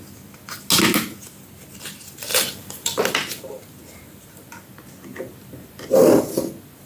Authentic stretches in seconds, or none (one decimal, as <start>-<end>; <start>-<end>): 0.0-2.3; 3.0-6.9